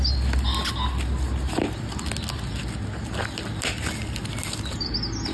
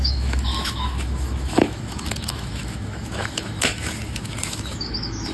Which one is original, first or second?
first